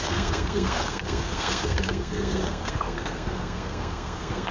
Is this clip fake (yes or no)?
yes